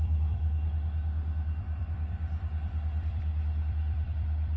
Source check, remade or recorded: remade